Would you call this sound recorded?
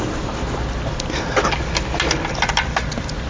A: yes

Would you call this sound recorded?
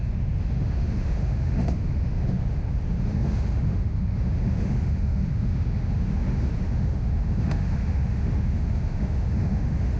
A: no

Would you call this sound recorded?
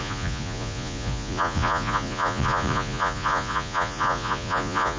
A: no